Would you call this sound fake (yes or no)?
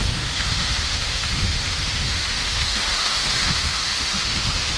yes